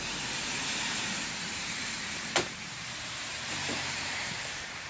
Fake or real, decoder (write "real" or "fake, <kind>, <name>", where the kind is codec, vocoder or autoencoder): fake, vocoder, BigVGAN v2